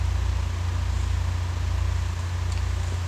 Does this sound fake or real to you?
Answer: real